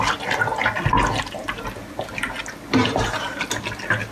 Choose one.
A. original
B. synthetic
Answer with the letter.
A